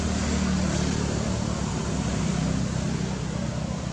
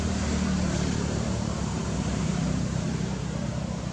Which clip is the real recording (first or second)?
first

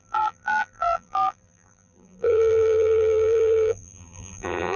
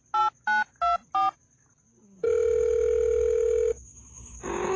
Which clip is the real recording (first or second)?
second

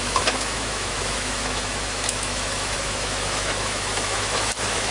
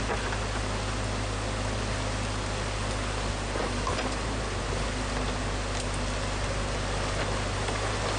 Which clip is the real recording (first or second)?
second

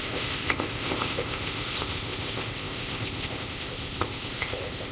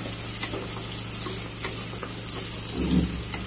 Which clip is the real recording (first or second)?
second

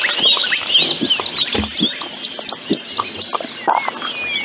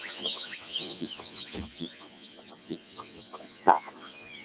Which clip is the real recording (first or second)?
first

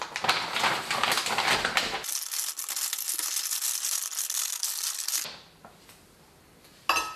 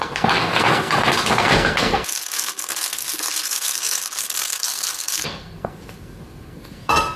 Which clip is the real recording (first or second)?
first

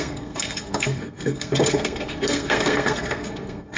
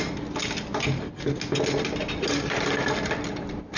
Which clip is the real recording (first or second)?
second